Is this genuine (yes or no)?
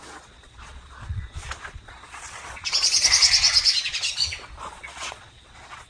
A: no